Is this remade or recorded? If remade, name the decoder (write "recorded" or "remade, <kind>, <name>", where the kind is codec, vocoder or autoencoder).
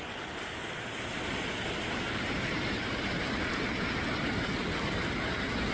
recorded